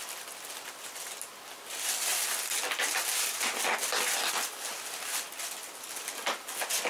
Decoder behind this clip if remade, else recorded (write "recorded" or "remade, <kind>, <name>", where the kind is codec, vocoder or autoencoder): recorded